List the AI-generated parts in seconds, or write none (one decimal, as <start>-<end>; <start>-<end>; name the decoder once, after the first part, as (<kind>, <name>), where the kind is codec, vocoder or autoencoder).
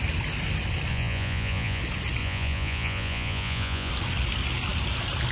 0.9-1.8 (vocoder, Vocos); 2.2-3.9